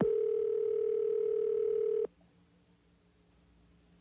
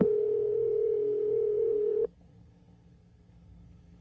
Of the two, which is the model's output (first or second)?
second